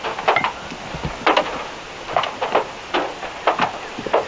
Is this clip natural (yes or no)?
yes